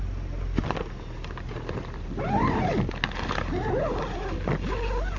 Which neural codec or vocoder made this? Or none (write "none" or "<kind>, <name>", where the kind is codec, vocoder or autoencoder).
none